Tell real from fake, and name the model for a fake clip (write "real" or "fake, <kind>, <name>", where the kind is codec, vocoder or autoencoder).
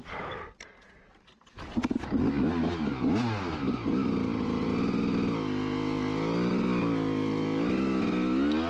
real